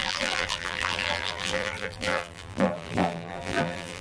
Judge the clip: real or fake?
fake